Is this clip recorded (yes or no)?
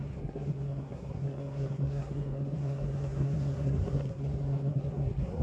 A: no